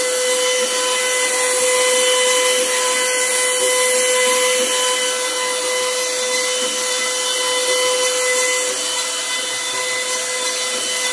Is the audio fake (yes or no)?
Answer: no